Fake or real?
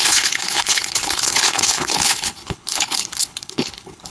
fake